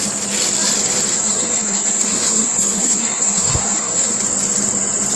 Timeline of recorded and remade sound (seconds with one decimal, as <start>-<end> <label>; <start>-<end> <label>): 0.0-1.1 recorded; 1.1-4.2 remade; 4.2-5.2 recorded